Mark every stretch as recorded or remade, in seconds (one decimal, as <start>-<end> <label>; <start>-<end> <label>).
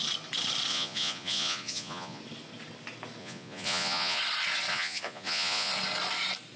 0.0-0.7 recorded; 0.7-2.2 remade; 2.2-3.2 recorded; 3.2-4.2 remade; 4.2-4.7 recorded; 4.7-5.7 remade; 5.7-6.6 recorded